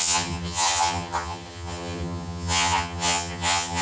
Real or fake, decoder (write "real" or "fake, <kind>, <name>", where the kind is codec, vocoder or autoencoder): fake, vocoder, HiFi-GAN